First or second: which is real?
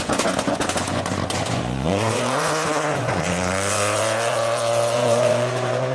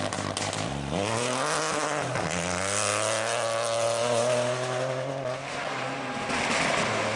second